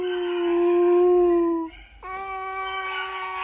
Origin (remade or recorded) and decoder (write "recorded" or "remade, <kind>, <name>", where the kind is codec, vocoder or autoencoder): recorded